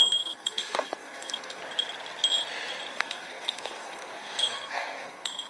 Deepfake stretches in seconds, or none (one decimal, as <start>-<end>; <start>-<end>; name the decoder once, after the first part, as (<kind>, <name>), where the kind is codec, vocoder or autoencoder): 0.0-1.6 (codec, SNAC); 2.9-5.5